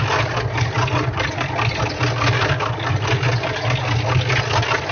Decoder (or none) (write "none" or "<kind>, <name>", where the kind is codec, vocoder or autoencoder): none